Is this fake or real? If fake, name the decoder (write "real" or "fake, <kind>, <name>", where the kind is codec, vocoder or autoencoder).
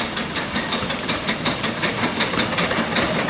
real